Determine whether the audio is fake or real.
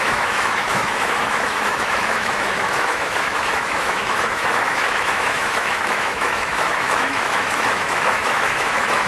fake